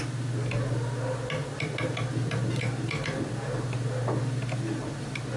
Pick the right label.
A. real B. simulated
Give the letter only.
A